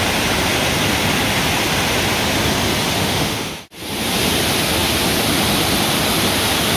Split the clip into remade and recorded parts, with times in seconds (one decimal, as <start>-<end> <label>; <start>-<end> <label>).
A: 0.0-3.0 recorded; 3.0-3.6 remade; 3.6-6.8 recorded